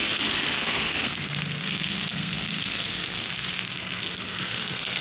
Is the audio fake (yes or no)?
yes